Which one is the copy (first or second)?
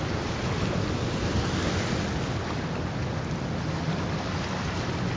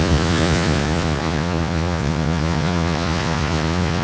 second